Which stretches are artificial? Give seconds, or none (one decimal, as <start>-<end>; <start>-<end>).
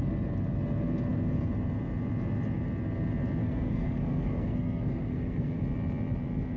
3.4-5.6